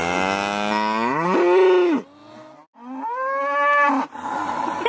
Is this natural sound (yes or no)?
yes